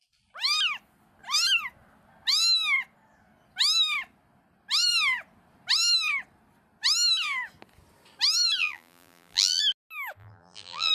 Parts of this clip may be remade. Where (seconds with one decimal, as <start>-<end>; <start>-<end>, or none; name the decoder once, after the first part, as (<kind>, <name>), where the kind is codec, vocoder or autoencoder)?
8.6-9.6 (vocoder, BigVGAN v2); 10.2-10.9